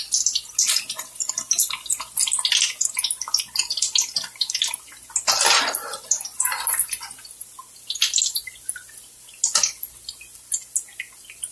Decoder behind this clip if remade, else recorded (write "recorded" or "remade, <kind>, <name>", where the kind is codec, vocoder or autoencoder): recorded